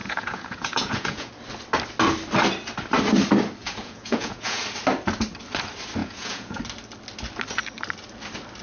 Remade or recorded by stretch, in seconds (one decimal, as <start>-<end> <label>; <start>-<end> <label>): 0.0-1.3 remade; 1.3-3.6 recorded; 3.6-4.6 remade; 4.6-6.0 recorded; 6.0-6.6 remade; 6.6-8.6 recorded